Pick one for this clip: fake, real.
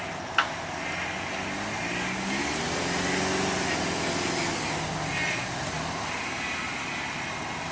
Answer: real